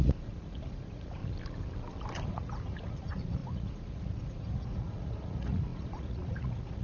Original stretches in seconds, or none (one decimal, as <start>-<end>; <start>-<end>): 1.2-2.3